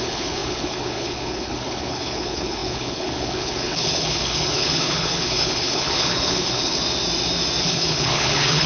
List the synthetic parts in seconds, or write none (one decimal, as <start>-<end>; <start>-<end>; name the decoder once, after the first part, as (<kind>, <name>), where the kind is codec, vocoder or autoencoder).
0.0-6.8 (codec, HILCodec); 7.6-8.7